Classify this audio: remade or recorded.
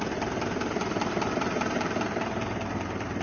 remade